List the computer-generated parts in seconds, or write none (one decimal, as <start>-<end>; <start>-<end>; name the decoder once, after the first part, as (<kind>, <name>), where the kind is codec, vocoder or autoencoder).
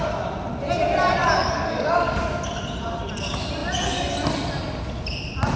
1.2-2.2 (codec, DAC)